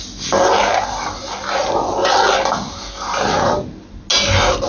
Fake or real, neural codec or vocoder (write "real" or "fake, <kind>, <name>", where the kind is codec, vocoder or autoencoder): real